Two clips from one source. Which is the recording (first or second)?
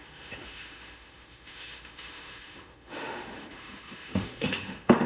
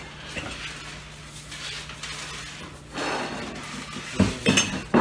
second